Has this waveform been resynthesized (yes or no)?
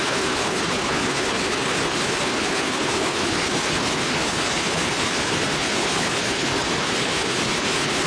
yes